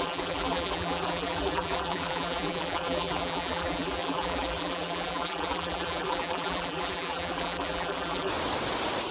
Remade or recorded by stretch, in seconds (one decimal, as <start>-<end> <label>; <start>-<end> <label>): 0.0-8.3 remade; 8.3-9.1 recorded